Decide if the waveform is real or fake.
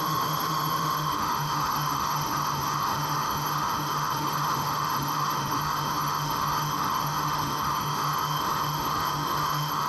fake